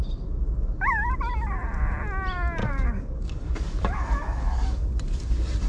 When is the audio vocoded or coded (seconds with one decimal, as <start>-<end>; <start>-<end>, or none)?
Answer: 2.6-4.9